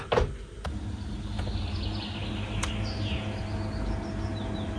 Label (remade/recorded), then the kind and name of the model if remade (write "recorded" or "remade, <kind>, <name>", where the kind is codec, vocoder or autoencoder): recorded